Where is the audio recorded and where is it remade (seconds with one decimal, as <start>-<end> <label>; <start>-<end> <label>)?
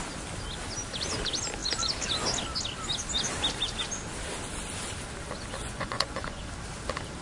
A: 0.0-5.6 recorded; 5.6-6.4 remade; 6.4-7.2 recorded